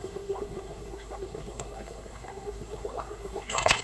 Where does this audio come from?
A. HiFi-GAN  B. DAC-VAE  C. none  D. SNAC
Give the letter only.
D